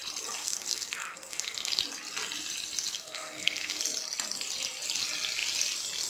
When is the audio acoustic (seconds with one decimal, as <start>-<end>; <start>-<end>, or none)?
0.0-0.4; 1.8-2.9; 3.8-6.1